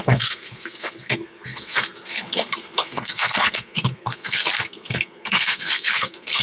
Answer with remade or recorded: remade